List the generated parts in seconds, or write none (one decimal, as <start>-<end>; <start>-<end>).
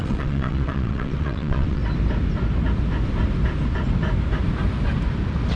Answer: 0.0-1.8